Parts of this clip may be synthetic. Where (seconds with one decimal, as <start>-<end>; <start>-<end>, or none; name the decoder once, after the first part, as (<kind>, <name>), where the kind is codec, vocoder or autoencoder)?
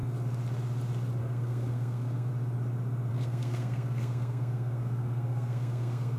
1.2-2.3 (codec, SNAC); 3.1-6.2